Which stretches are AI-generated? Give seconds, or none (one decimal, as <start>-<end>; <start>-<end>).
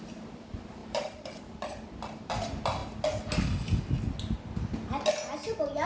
0.8-1.4